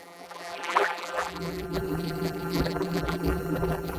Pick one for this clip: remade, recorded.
remade